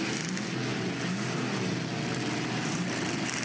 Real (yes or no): yes